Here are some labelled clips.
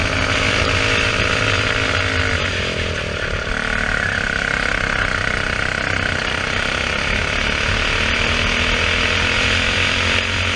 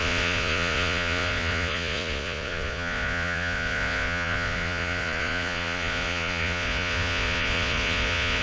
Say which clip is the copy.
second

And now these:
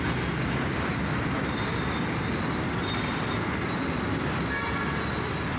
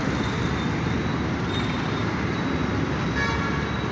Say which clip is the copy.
first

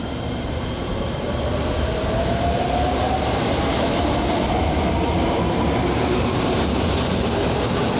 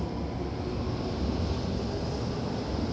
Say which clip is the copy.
first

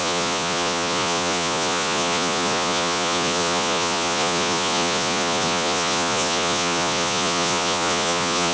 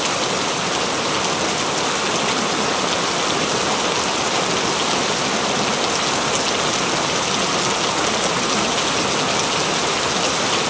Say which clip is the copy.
first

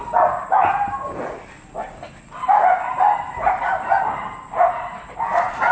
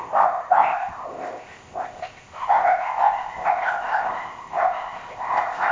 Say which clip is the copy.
second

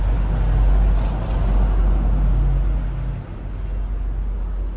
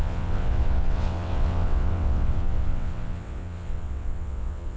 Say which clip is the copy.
second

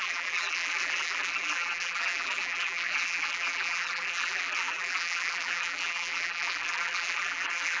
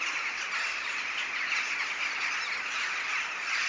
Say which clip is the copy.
first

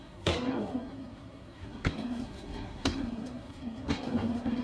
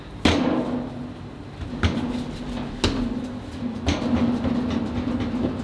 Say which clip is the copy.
first